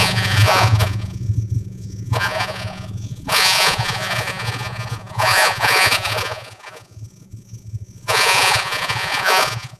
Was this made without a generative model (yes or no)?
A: no